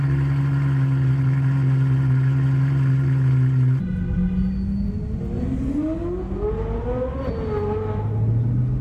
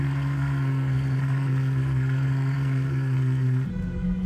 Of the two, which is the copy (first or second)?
second